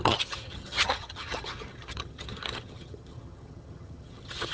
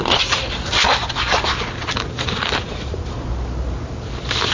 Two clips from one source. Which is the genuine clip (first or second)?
second